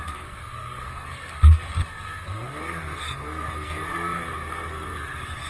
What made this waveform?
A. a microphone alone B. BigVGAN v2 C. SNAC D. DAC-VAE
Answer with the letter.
C